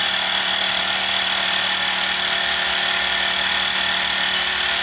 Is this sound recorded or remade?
recorded